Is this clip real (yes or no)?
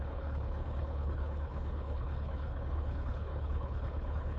no